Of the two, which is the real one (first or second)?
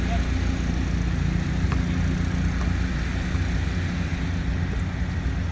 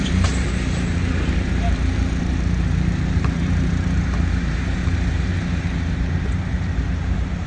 first